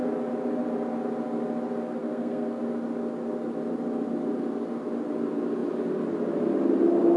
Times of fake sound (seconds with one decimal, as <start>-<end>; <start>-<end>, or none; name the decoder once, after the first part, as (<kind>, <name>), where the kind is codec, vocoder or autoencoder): 2.0-2.6 (codec, SNAC)